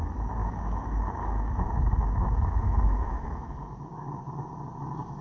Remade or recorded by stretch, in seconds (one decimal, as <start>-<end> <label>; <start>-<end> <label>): 0.0-0.4 recorded; 0.4-3.5 remade; 3.5-5.2 recorded